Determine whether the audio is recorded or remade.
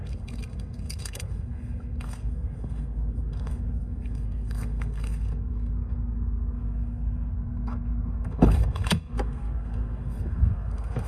remade